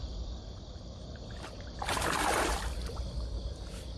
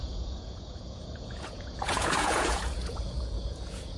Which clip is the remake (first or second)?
second